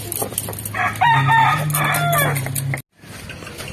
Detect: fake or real real